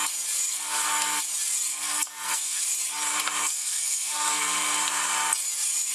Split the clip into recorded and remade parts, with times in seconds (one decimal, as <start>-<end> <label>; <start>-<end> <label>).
0.0-0.5 recorded; 0.5-1.2 remade; 1.2-1.7 recorded; 1.7-2.6 remade; 2.6-3.4 recorded; 3.4-4.8 remade; 4.8-5.9 recorded